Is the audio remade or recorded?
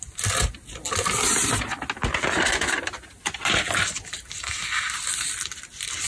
recorded